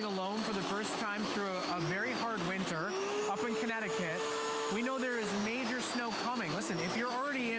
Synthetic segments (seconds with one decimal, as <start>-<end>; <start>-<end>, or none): 0.0-1.6; 2.7-3.2; 4.1-5.4; 6.6-7.6